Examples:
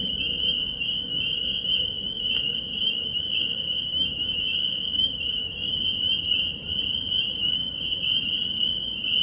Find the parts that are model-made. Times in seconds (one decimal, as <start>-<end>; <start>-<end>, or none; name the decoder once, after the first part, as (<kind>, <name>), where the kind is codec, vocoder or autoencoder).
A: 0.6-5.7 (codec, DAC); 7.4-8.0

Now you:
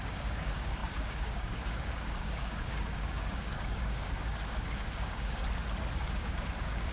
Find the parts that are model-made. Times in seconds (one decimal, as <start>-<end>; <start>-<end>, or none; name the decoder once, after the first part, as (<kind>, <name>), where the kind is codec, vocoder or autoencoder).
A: 0.0-5.4 (codec, DAC); 6.0-6.9

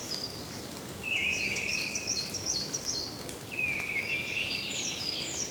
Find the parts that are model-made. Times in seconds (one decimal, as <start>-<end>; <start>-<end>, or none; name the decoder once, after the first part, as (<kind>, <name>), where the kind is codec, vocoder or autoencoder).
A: 0.0-5.5 (codec, DAC)

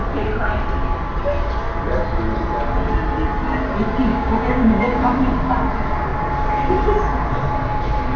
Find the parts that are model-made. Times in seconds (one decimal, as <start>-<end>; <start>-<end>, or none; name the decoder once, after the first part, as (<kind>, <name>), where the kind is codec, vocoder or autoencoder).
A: 4.1-5.0 (codec, DAC)